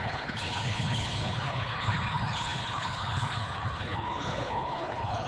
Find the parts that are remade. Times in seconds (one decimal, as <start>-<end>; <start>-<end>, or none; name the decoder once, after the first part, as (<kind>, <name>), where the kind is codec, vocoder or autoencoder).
0.0-5.3 (codec, HILCodec)